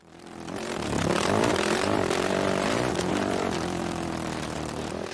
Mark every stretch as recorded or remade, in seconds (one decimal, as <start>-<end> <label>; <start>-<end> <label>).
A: 0.0-5.1 remade